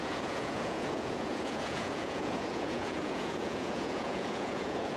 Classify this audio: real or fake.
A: fake